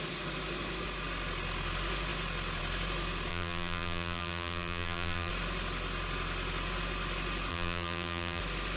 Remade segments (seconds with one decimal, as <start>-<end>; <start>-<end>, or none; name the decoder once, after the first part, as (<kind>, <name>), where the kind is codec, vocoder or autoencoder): 3.3-5.3 (vocoder, BigVGAN v2); 7.5-8.4